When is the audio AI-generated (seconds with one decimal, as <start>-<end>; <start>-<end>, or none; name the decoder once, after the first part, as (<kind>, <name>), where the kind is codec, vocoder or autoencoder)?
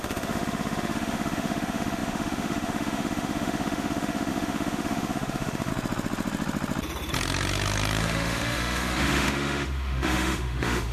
0.0-5.7 (autoencoder, DAC-VAE); 8.0-10.9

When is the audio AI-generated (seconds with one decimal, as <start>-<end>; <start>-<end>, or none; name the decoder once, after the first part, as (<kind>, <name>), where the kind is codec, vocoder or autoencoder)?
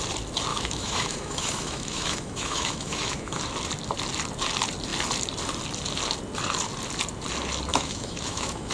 0.5-3.4 (autoencoder, DAC-VAE); 7.7-8.7